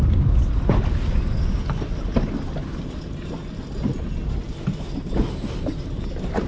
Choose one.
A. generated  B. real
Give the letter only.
B